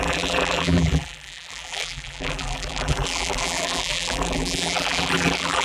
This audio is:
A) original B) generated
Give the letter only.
B